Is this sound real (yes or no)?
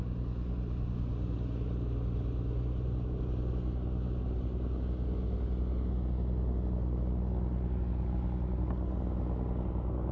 yes